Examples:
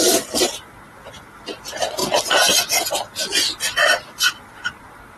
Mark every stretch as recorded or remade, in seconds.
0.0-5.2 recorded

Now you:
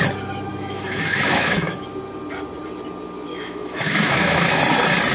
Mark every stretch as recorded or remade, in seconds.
0.0-0.5 recorded; 0.5-1.8 remade; 1.8-3.3 recorded; 3.3-4.6 remade; 4.6-5.1 recorded

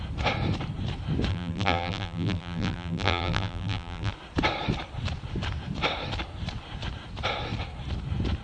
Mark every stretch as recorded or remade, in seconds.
0.0-1.3 recorded; 1.3-4.1 remade; 4.1-8.4 recorded

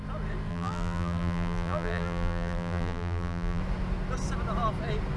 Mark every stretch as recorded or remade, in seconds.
0.0-0.5 recorded; 0.5-3.6 remade; 3.6-5.2 recorded

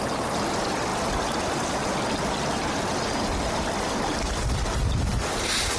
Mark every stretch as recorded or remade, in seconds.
0.0-5.8 recorded

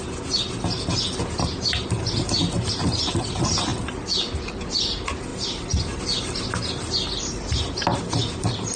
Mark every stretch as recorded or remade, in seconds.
0.0-5.3 recorded; 5.3-6.0 remade; 6.0-8.8 recorded

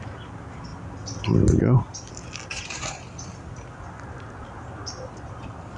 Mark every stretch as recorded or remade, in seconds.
0.0-5.8 recorded

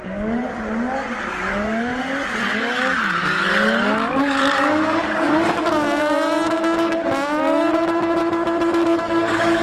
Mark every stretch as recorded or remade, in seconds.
0.0-0.4 remade; 0.4-1.4 recorded; 1.4-1.9 remade; 1.9-2.4 recorded; 2.4-8.2 remade; 8.2-9.0 recorded; 9.0-9.6 remade